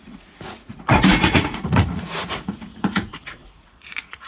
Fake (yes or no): yes